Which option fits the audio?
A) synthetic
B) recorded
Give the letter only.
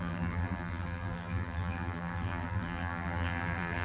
A